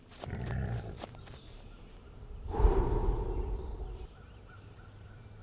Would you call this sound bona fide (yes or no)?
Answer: no